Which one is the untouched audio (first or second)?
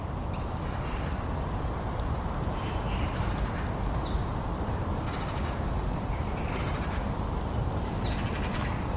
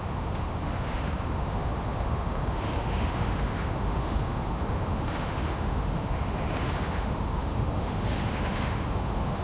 first